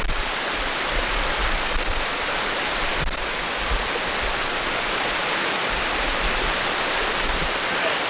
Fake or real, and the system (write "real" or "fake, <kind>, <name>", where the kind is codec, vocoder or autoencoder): fake, vocoder, BigVGAN v2